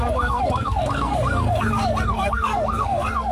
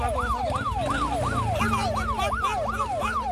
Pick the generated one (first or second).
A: first